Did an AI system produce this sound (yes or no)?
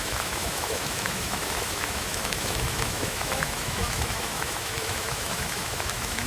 yes